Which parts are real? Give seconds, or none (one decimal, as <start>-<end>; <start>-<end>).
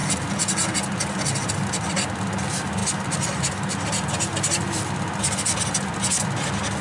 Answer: 0.0-6.8